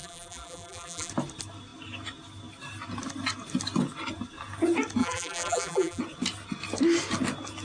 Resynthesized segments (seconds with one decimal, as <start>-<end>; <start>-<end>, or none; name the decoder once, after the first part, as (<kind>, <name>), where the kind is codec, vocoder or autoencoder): 0.0-1.1 (vocoder, BigVGAN v2); 5.0-6.0